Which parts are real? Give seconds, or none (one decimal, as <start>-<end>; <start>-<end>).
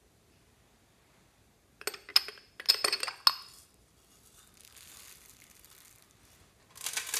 0.0-7.2